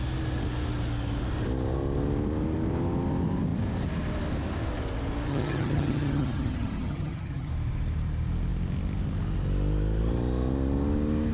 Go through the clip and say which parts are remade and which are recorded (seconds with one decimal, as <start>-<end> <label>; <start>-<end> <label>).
0.0-5.3 recorded; 5.3-7.5 remade; 7.5-11.3 recorded